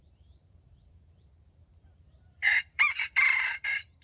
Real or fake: fake